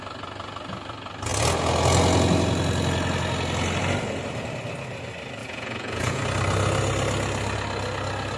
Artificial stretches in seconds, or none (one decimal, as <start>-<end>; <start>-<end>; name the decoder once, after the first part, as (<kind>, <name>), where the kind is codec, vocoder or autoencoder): 5.4-6.2 (vocoder, Vocos)